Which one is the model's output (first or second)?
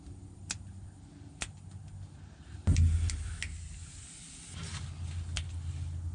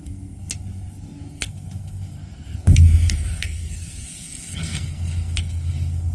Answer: second